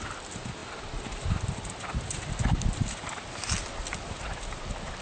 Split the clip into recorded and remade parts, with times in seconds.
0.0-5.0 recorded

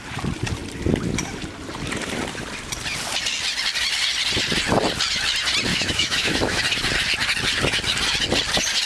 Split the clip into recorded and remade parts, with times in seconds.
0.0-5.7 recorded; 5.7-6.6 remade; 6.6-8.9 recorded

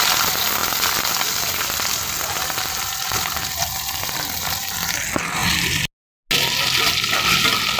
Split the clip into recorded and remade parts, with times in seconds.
0.0-7.8 recorded

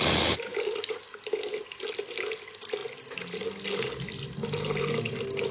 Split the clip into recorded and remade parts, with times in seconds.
0.0-5.5 recorded

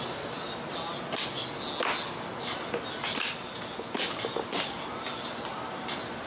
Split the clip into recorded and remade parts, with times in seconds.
0.0-6.3 recorded

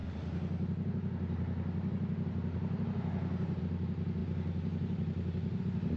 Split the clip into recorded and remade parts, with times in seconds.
0.0-6.0 recorded

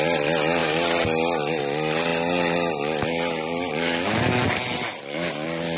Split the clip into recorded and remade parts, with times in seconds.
0.0-5.8 recorded